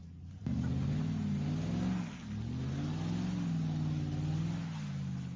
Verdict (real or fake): real